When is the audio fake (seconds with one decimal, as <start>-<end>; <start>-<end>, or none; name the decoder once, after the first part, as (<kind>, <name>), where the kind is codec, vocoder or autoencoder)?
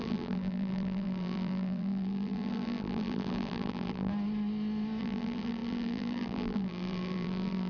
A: 0.0-4.1 (vocoder, BigVGAN v2); 5.0-7.7